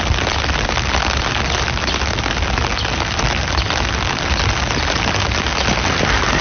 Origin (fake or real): real